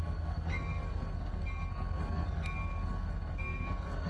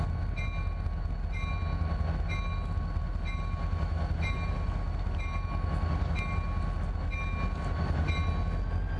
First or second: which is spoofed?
first